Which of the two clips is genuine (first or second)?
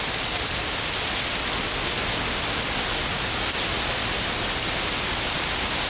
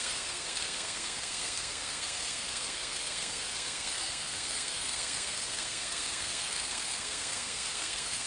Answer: first